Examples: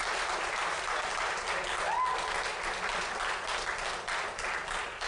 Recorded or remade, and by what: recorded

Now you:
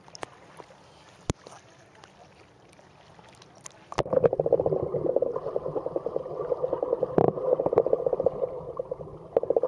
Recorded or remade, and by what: recorded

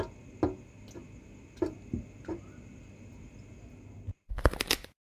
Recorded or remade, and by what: recorded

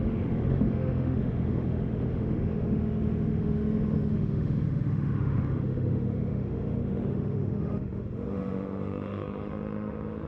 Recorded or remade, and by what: remade, autoencoder, DAC-VAE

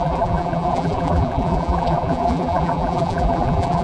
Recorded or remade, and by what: remade, vocoder, BigVGAN v2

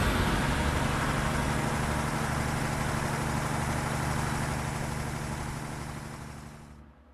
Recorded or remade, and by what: recorded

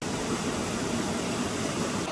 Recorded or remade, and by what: recorded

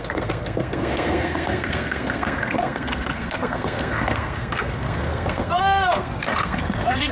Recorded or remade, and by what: remade, codec, SNAC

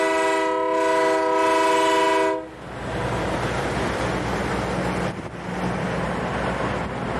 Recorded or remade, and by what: recorded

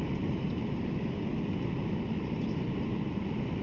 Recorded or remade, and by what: remade, vocoder, BigVGAN v2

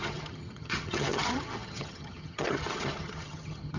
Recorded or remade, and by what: remade, vocoder, HiFi-GAN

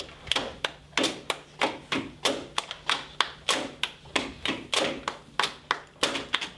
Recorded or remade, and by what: recorded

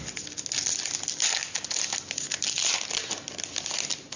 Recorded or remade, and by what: recorded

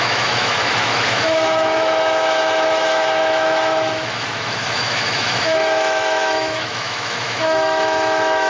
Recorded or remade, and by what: remade, autoencoder, DAC-VAE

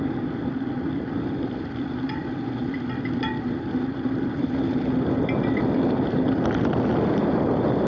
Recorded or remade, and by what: recorded